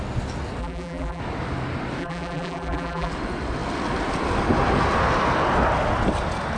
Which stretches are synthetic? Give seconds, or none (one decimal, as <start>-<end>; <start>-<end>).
0.6-1.2; 2.0-3.1